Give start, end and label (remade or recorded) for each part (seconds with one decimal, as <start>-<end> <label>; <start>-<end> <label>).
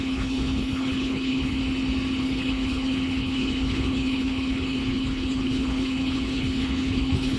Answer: 0.0-1.6 remade; 1.6-2.2 recorded; 2.2-7.4 remade